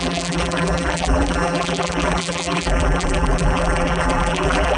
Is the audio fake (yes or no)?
yes